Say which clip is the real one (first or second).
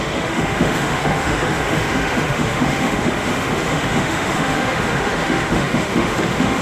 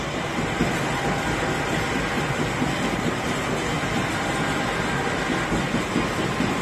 second